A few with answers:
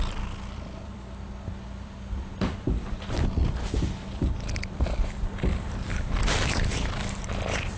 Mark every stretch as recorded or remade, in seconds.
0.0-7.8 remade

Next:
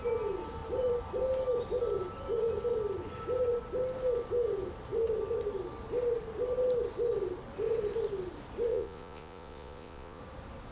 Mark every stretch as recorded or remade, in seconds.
0.0-8.7 recorded; 8.7-10.2 remade; 10.2-10.7 recorded